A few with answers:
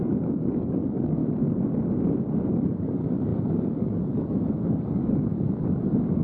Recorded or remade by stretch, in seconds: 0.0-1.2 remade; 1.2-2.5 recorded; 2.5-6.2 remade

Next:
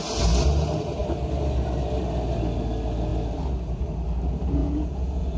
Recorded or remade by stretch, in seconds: 0.0-4.6 recorded; 4.6-5.4 remade